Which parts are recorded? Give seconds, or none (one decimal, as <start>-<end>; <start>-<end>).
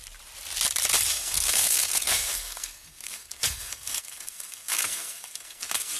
0.0-1.1